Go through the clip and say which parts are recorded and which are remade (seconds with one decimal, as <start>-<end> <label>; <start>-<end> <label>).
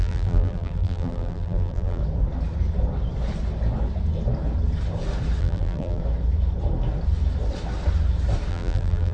0.0-2.0 remade; 2.0-5.4 recorded; 5.4-6.0 remade; 6.0-8.5 recorded; 8.5-9.1 remade